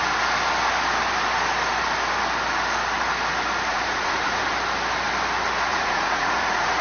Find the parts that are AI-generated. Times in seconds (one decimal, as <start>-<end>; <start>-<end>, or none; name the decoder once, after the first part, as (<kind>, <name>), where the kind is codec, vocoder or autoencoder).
3.7-4.4 (vocoder, Vocos); 5.7-6.8